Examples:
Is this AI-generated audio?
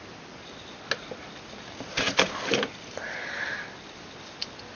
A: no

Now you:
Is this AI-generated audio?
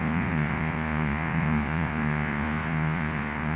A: yes